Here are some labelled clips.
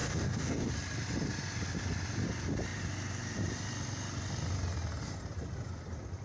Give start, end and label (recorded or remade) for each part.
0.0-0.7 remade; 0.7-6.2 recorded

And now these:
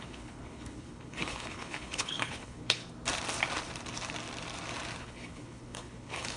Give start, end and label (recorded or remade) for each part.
0.0-2.8 remade; 2.8-5.0 recorded; 5.0-6.4 remade

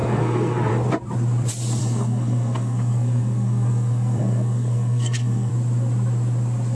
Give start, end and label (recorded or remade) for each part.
0.0-0.7 remade; 0.7-1.8 recorded; 1.8-5.5 remade; 5.5-6.7 recorded

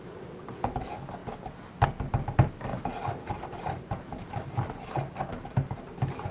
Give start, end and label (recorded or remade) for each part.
0.0-2.7 recorded; 2.7-4.7 remade; 4.7-5.3 recorded; 5.3-6.3 remade

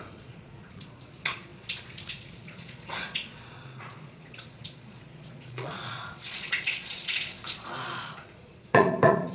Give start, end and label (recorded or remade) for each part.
0.0-9.3 remade

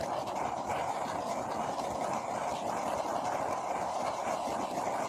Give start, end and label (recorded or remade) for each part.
0.0-5.1 remade

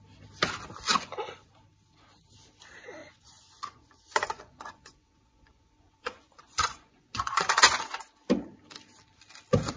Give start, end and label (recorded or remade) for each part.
0.0-0.9 recorded; 0.9-1.5 remade; 1.5-3.0 recorded; 3.0-8.1 remade; 8.1-9.8 recorded